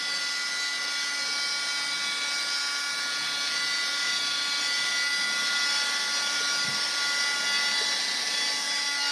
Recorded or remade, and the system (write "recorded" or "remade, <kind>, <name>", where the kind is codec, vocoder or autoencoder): recorded